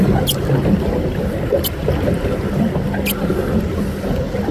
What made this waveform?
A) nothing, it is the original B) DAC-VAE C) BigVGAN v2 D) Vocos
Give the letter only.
A